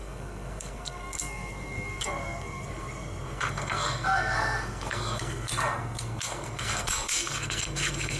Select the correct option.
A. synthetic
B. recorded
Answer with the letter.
A